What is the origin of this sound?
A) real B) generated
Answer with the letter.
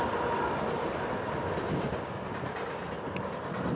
A